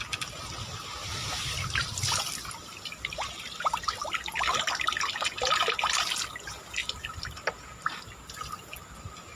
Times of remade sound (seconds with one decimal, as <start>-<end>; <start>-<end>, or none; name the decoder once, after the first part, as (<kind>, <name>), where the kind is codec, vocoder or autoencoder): 2.7-3.8 (vocoder, BigVGAN v2)